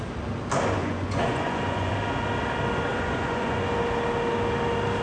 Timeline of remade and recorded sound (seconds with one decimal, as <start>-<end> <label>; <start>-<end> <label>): 0.0-0.8 recorded; 0.8-1.9 remade; 1.9-2.9 recorded; 2.9-3.7 remade; 3.7-5.0 recorded